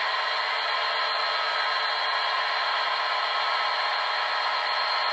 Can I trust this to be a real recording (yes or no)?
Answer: yes